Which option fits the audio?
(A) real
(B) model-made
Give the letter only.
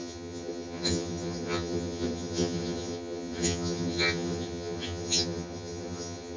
B